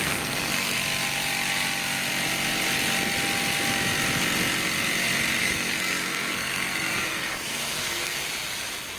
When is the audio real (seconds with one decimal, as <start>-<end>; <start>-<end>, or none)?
0.8-5.4; 8.2-9.0